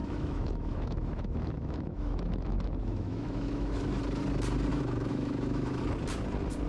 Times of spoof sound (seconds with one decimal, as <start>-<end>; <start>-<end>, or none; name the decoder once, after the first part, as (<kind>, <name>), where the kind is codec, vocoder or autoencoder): 0.0-4.0 (autoencoder, DAC-VAE); 4.7-5.8